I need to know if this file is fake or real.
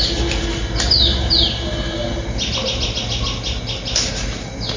real